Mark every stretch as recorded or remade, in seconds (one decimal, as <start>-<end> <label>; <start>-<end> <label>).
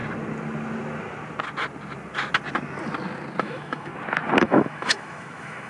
0.0-3.4 recorded; 3.4-3.9 remade; 3.9-4.4 recorded; 4.4-5.7 remade